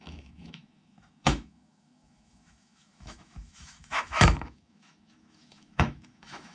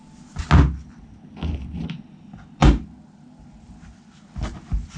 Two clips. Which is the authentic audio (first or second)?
second